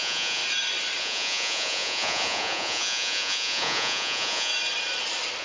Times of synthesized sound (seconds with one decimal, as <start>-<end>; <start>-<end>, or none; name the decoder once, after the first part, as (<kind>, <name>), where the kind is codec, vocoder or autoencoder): 0.0-0.4 (vocoder, Vocos); 1.0-4.5